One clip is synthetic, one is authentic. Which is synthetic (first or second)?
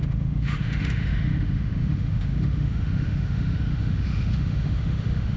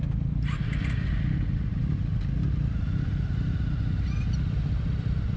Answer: first